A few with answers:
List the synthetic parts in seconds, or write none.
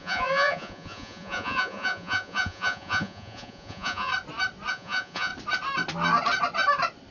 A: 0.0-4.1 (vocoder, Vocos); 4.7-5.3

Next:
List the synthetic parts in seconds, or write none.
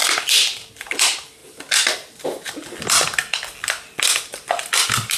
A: none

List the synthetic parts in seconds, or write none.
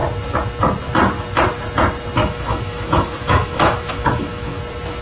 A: 2.2-4.6 (autoencoder, DAC-VAE)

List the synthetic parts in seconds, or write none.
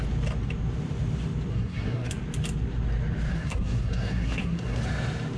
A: 1.5-2.1 (codec, SNAC); 3.3-4.8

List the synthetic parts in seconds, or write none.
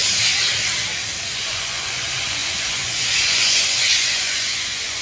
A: 1.2-5.0 (vocoder, Vocos)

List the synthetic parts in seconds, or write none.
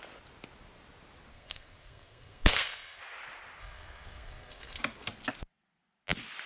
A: 1.3-3.0 (codec, SNAC); 3.6-4.8